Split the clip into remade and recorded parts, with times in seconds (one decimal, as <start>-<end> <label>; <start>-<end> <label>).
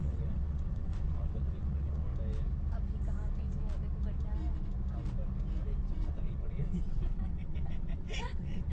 0.0-2.1 remade; 2.1-5.9 recorded; 5.9-8.7 remade